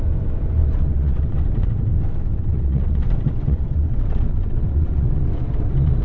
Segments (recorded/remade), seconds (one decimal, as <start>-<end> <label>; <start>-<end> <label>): 0.0-0.6 recorded; 0.6-1.9 remade; 1.9-2.3 recorded; 2.3-6.0 remade